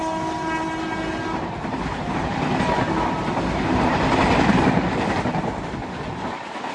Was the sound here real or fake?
real